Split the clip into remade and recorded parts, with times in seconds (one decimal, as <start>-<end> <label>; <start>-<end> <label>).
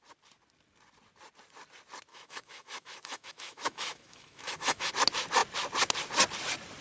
0.0-2.1 recorded; 2.1-4.9 remade; 4.9-6.8 recorded